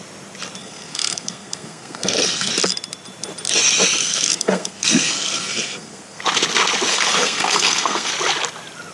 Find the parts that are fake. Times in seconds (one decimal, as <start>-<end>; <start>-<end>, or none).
0.6-2.5; 4.0-6.2; 6.9-8.1